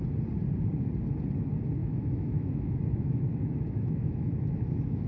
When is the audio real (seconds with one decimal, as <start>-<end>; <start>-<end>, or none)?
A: 0.0-1.8